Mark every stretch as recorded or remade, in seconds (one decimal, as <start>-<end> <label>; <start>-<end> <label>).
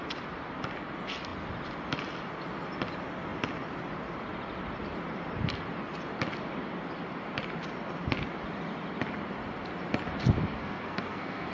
0.0-10.6 recorded; 10.6-11.5 remade